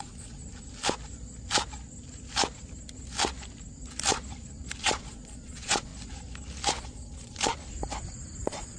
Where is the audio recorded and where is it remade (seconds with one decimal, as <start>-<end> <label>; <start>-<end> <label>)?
0.0-0.4 remade; 0.4-4.8 recorded; 4.8-5.9 remade; 5.9-6.8 recorded; 6.8-7.5 remade; 7.5-8.4 recorded; 8.4-8.8 remade